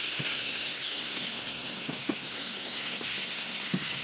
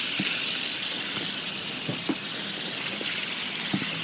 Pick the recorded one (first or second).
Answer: second